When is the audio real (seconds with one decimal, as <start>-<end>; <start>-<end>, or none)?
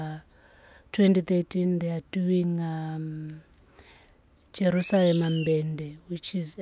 4.1-6.0